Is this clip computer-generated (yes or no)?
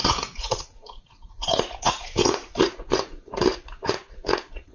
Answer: yes